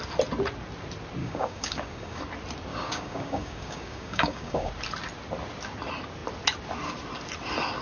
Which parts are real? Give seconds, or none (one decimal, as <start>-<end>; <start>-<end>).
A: 0.0-1.2; 2.2-2.7; 4.7-7.8